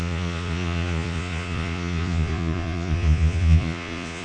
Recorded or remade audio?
remade